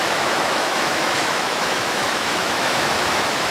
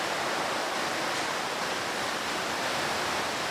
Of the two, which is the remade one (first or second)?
first